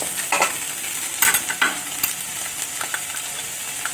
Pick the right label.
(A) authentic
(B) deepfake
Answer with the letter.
A